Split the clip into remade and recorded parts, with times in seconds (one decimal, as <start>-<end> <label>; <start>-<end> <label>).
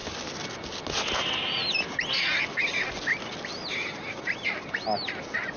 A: 0.0-5.6 recorded